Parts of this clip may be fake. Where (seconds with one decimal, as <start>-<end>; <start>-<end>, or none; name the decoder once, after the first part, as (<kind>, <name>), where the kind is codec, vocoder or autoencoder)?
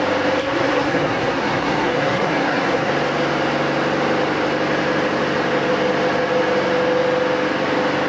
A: 0.4-2.9 (codec, SNAC)